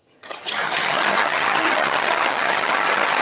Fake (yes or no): yes